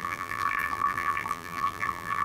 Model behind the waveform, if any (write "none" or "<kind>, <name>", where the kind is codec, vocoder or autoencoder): vocoder, BigVGAN v2